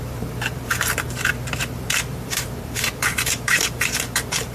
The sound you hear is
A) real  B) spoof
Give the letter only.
B